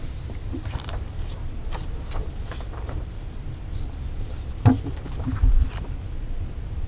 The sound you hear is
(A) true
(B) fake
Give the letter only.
B